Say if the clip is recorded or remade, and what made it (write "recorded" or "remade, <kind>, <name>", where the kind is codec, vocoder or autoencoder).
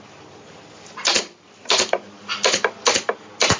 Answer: recorded